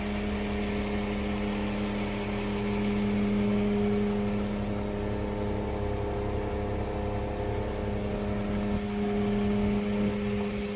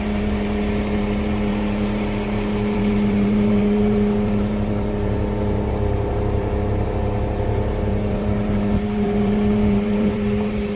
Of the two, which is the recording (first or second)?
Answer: first